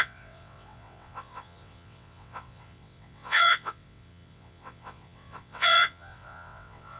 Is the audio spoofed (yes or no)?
yes